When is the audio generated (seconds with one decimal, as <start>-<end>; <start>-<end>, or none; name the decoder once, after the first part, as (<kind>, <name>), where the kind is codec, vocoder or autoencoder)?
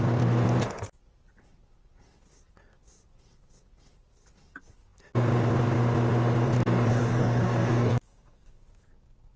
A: 6.9-8.6 (codec, DAC)